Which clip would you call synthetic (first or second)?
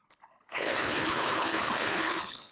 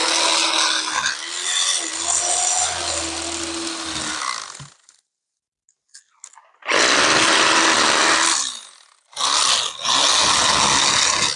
first